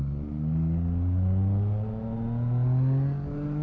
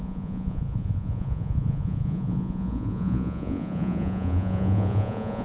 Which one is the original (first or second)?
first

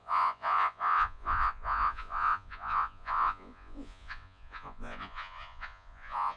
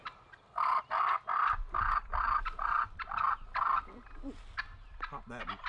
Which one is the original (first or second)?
second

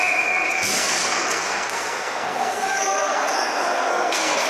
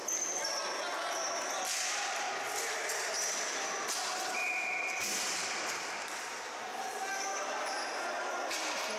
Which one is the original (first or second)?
second